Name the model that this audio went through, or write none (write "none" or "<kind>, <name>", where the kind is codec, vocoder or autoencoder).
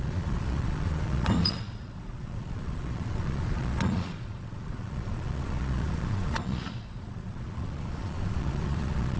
vocoder, Vocos